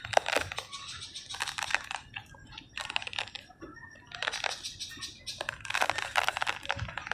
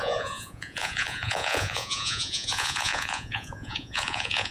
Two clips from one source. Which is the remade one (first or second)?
second